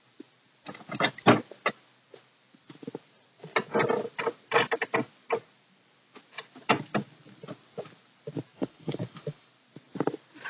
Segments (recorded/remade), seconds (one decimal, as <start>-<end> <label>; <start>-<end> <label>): 0.0-8.5 recorded; 8.5-9.5 remade; 9.5-10.5 recorded